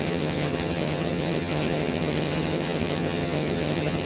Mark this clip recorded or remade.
remade